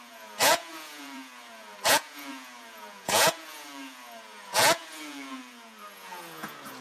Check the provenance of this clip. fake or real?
fake